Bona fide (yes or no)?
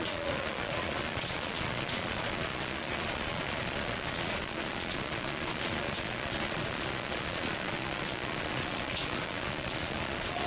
no